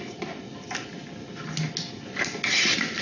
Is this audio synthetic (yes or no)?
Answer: no